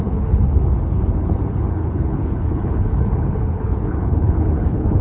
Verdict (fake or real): fake